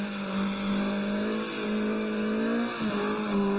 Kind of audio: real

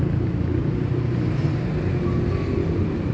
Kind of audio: real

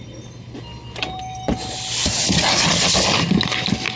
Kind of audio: real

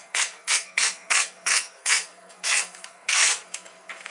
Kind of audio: fake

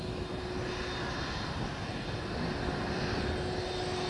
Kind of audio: real